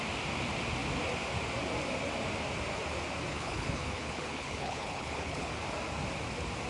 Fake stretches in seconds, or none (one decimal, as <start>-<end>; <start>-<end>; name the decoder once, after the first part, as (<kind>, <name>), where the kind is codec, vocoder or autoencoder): 3.3-5.5 (codec, HILCodec)